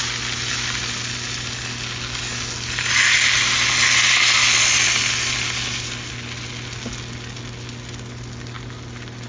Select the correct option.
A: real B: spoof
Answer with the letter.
A